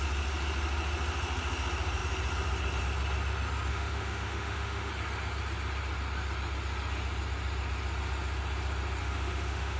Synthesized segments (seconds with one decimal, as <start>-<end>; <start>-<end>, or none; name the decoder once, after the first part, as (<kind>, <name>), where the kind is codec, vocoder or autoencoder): 3.7-4.9 (autoencoder, DAC-VAE); 9.0-9.8

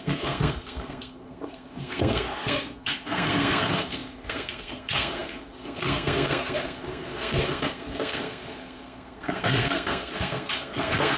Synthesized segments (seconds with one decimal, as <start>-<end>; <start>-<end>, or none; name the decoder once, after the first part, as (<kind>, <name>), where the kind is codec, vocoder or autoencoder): 0.0-11.2 (codec, SNAC)

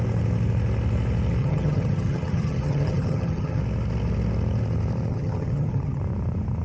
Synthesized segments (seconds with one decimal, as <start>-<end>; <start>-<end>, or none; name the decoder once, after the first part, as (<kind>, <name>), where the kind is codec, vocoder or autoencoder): 1.4-3.6 (vocoder, HiFi-GAN); 5.1-6.0

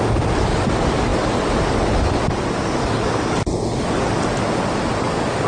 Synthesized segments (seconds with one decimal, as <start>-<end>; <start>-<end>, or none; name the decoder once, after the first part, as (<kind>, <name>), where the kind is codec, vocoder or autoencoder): none

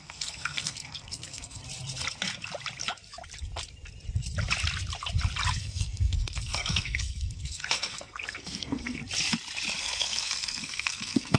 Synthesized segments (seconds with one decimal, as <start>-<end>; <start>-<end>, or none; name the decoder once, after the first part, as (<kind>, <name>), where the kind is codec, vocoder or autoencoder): 0.0-1.6 (codec, SNAC); 5.5-9.0; 9.8-11.4

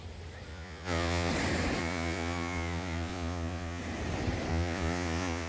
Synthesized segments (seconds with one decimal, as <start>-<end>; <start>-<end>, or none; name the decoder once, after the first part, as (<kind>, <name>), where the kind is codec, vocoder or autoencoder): 0.5-1.3 (vocoder, Vocos); 1.8-3.8; 4.5-5.5

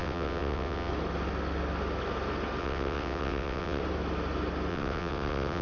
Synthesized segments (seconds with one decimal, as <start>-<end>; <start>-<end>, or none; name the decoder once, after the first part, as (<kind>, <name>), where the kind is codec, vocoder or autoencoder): 0.0-0.9 (vocoder, WaveNeXt); 2.6-3.8; 4.7-5.6

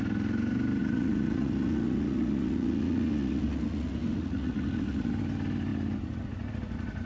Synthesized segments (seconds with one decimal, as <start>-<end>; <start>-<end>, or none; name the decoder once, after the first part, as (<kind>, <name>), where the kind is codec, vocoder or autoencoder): 0.8-5.1 (vocoder, Vocos)